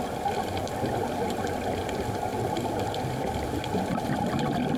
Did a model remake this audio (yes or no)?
no